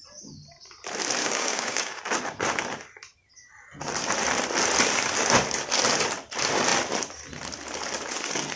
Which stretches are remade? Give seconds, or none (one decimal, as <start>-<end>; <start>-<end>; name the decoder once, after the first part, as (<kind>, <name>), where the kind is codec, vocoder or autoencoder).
1.2-2.0 (codec, DAC)